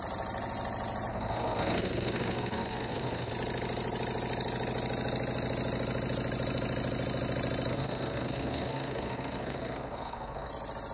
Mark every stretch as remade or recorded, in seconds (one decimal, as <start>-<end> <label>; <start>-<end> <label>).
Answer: 0.0-1.1 recorded; 1.1-3.3 remade; 3.3-7.7 recorded; 7.7-10.5 remade; 10.5-10.9 recorded